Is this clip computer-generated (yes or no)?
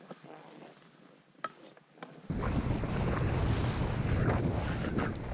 no